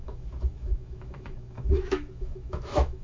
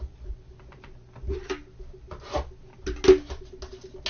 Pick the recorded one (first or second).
second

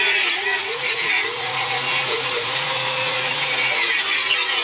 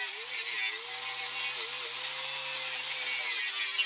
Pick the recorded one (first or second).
second